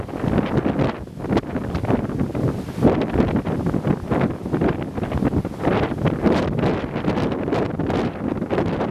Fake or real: real